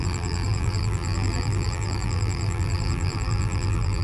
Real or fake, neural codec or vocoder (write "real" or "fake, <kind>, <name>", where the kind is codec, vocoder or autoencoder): fake, vocoder, BigVGAN v2